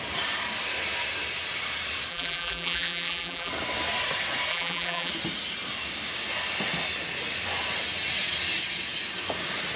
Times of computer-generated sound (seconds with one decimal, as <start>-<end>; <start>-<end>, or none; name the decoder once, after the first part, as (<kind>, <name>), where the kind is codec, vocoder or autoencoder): 2.1-3.5 (vocoder, BigVGAN v2); 4.5-5.1